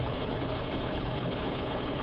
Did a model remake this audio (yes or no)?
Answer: yes